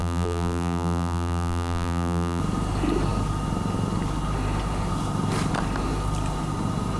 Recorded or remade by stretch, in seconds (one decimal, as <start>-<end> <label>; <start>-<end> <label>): 0.0-2.4 remade; 2.4-7.0 recorded